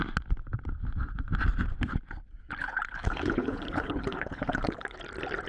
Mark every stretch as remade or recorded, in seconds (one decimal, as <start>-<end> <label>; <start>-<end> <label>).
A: 0.0-2.6 recorded; 2.6-5.0 remade; 5.0-5.5 recorded

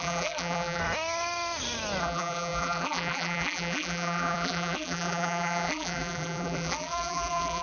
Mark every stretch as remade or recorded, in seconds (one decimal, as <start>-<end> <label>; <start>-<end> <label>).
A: 0.0-0.8 remade; 0.8-2.0 recorded; 2.0-7.6 remade

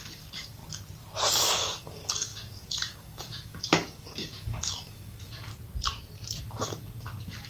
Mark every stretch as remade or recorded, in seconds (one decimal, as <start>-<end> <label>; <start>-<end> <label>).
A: 0.0-0.6 remade; 0.6-1.3 recorded; 1.3-5.5 remade; 5.5-6.4 recorded; 6.4-7.5 remade

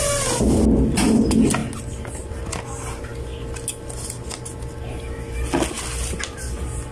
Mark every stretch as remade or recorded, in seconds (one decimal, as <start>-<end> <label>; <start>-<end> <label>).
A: 0.0-6.9 recorded

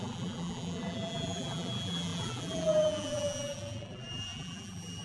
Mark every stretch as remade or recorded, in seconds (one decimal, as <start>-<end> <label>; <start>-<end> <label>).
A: 0.0-5.0 remade

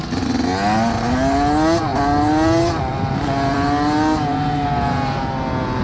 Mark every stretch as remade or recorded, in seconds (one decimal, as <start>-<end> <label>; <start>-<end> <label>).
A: 0.0-5.8 recorded

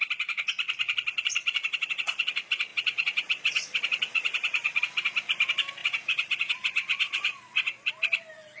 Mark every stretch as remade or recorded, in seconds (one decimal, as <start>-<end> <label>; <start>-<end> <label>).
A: 0.0-1.6 recorded; 1.6-2.3 remade; 2.3-2.7 recorded; 2.7-4.8 remade; 4.8-5.8 recorded; 5.8-7.9 remade; 7.9-8.6 recorded